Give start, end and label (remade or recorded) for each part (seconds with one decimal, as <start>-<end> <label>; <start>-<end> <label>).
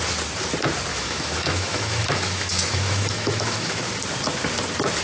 0.0-0.9 recorded; 0.9-3.8 remade; 3.8-5.0 recorded